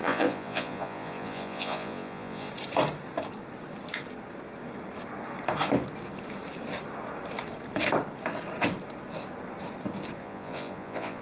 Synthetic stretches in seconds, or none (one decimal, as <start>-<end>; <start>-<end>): 0.0-2.5; 10.2-11.2